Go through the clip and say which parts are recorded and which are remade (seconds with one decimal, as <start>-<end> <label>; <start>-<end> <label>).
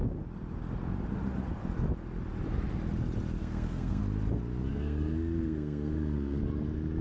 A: 0.0-3.4 recorded; 3.4-4.0 remade; 4.0-4.7 recorded; 4.7-6.4 remade; 6.4-7.0 recorded